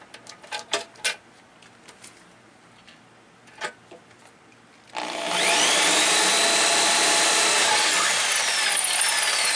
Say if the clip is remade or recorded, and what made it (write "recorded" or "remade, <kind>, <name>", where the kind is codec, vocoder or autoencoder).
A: recorded